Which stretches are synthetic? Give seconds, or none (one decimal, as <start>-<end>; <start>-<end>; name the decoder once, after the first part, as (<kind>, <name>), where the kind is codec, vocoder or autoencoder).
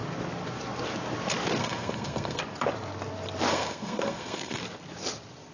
1.6-2.4 (codec, SNAC); 3.5-4.6